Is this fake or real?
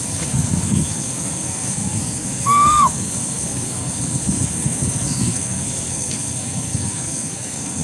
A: fake